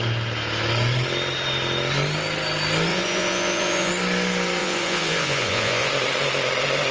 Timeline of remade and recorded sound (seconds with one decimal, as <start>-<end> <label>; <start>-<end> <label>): 0.0-2.9 recorded; 2.9-3.9 remade; 3.9-4.6 recorded; 4.6-5.9 remade; 5.9-6.9 recorded

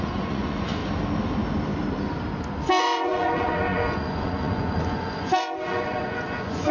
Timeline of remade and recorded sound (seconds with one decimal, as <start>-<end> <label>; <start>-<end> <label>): 0.0-0.8 remade; 0.8-2.6 recorded; 2.6-6.7 remade